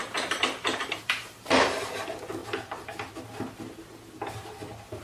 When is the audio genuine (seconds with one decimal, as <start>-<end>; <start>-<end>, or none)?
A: 2.0-2.4; 3.1-5.0